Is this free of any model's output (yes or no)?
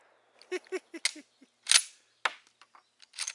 yes